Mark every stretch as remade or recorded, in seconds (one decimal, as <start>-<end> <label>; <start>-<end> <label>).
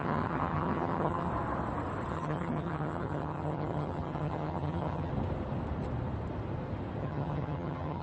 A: 0.0-1.3 remade; 1.3-2.1 recorded; 2.1-5.1 remade; 5.1-7.0 recorded; 7.0-8.0 remade